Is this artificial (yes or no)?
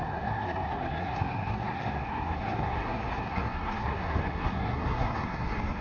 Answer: yes